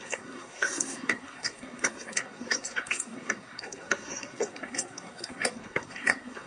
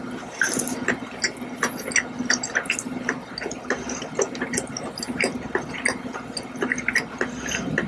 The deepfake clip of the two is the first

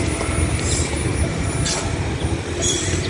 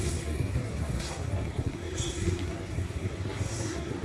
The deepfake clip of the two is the second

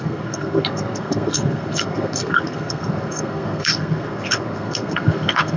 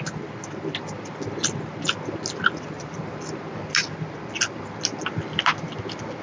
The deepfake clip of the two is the first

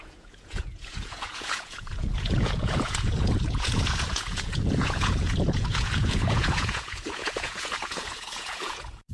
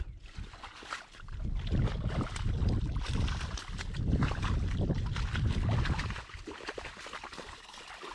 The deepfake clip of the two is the first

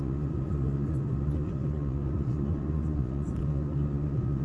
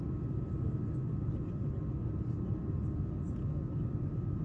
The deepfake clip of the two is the first